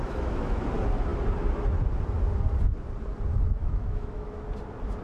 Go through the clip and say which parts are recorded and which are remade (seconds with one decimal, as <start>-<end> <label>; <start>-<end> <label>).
0.0-0.6 remade; 0.6-3.6 recorded; 3.6-4.4 remade; 4.4-5.0 recorded